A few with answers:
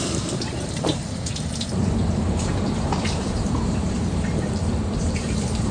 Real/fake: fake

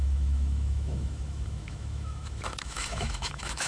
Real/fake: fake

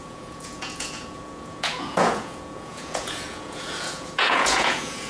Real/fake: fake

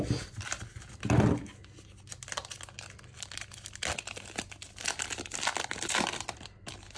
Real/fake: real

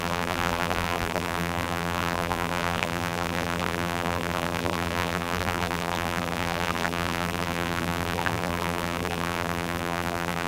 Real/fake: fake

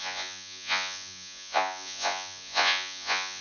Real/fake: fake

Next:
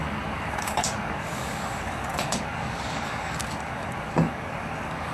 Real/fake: fake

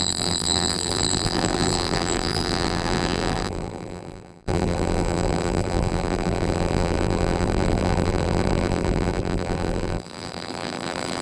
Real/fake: fake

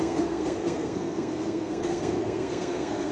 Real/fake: fake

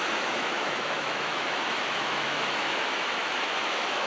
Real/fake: fake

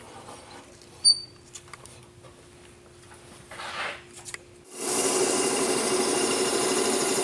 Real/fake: real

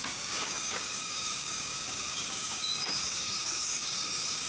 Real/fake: fake